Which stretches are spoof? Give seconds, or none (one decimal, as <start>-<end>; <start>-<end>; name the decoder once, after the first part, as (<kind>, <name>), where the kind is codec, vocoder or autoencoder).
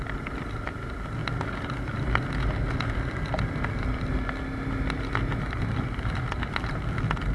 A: none